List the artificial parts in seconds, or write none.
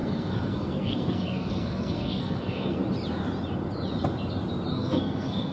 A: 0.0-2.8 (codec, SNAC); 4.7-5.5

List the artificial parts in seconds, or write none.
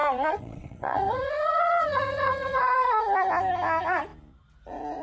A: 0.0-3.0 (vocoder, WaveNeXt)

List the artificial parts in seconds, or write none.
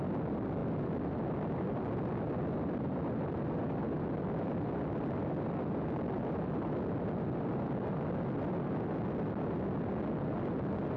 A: none